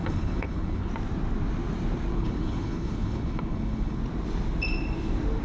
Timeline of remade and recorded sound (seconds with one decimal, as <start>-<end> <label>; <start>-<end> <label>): 0.0-0.9 remade; 0.9-2.1 recorded; 2.1-4.0 remade; 4.0-5.4 recorded